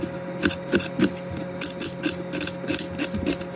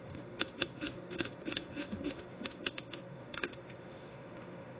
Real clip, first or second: first